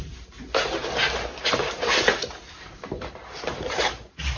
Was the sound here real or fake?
fake